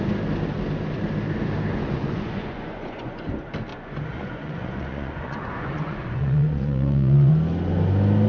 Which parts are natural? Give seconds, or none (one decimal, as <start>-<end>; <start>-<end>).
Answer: 0.0-1.7; 3.3-3.7; 7.3-8.3

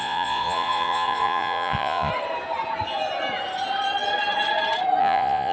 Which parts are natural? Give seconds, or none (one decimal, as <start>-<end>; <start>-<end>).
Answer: 2.1-5.0